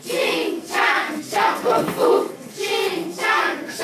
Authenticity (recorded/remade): remade